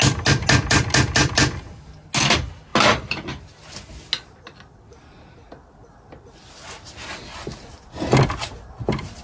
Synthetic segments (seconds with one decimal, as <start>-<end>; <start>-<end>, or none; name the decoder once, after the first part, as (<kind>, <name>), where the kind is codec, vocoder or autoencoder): none